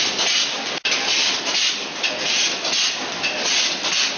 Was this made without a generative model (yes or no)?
yes